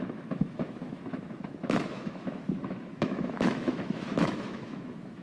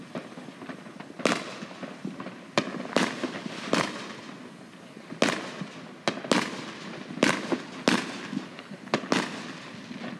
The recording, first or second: second